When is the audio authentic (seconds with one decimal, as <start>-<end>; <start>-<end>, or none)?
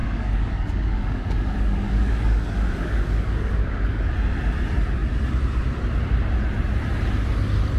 4.0-7.8